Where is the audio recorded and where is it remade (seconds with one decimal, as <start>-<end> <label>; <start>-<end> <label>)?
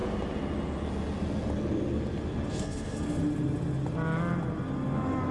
0.0-2.5 recorded; 2.5-3.2 remade; 3.2-5.3 recorded